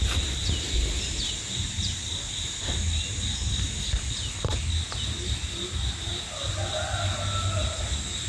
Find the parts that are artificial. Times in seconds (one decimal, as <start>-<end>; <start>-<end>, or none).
none